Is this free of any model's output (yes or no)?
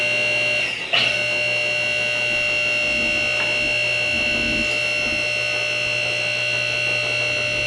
yes